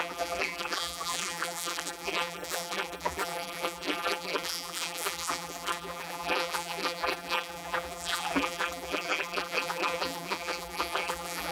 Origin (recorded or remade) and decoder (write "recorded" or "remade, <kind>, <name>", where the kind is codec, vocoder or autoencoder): remade, vocoder, BigVGAN v2